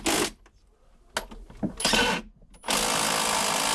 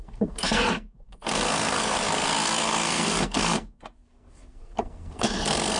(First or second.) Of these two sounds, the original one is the first